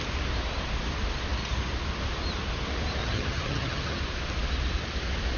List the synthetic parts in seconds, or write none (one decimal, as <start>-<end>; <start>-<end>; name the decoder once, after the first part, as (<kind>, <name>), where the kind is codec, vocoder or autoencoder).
3.0-4.0 (vocoder, HiFi-GAN)